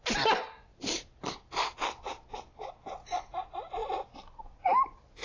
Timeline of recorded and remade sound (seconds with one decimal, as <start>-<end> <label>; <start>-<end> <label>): 0.0-0.7 recorded; 0.7-1.3 remade; 1.3-3.8 recorded; 3.8-4.6 remade; 4.6-5.2 recorded